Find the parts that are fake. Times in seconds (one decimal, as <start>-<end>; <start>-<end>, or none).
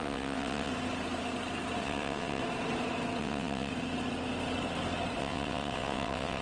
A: 0.0-0.7; 1.8-2.4; 3.2-3.7; 5.2-6.4